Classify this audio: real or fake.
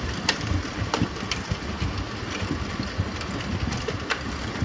real